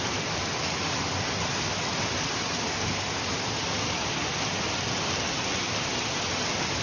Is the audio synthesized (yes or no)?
no